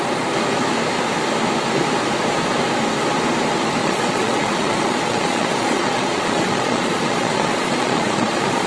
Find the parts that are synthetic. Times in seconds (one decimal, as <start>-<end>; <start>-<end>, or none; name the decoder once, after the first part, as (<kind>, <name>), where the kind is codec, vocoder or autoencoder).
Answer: 3.8-8.7 (vocoder, Vocos)